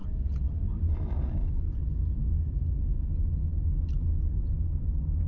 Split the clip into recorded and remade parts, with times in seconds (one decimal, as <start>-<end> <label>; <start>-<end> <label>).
0.0-1.8 remade; 1.8-5.3 recorded